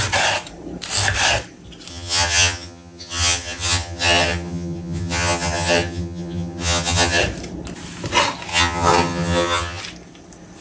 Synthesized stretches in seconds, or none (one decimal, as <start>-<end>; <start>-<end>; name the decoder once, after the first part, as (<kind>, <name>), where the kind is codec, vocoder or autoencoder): 1.9-7.2 (vocoder, HiFi-GAN); 8.5-9.8